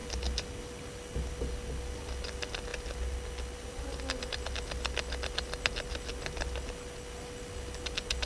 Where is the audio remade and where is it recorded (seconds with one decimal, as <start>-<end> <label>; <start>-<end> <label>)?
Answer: 0.0-8.3 recorded